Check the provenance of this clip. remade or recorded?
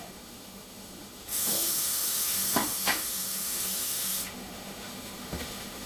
remade